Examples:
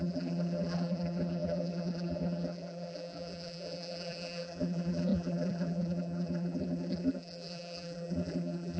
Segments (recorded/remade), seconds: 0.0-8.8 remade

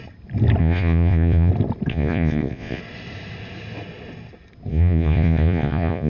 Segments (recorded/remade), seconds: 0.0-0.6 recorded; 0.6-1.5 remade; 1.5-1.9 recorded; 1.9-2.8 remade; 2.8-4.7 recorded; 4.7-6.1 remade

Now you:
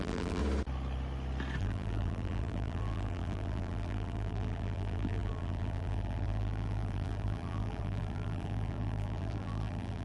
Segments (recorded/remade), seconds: 0.0-0.4 remade; 0.4-1.6 recorded; 1.6-10.0 remade

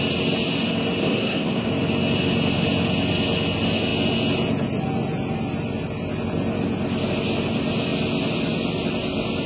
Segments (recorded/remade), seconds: 0.0-1.0 recorded; 1.0-1.7 remade; 1.7-9.5 recorded

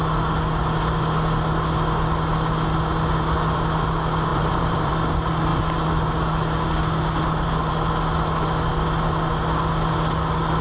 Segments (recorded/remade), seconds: 0.0-4.3 recorded; 4.3-4.9 remade; 4.9-10.6 recorded

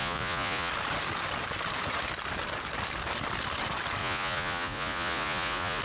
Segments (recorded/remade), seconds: 0.0-0.7 remade; 0.7-4.0 recorded; 4.0-5.8 remade

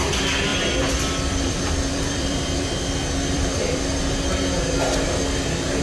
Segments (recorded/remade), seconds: 0.0-0.5 recorded; 0.5-4.0 remade; 4.0-5.8 recorded

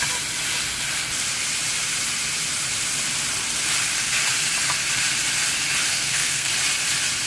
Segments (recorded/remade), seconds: 0.0-5.9 recorded; 5.9-6.5 remade; 6.5-7.3 recorded